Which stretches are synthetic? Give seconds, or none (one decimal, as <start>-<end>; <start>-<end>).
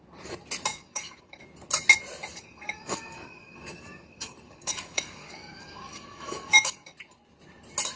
0.7-1.4; 2.3-6.9